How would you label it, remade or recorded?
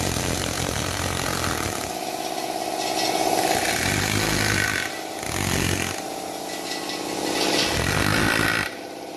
recorded